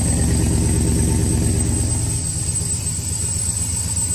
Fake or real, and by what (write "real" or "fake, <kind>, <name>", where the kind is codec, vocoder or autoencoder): real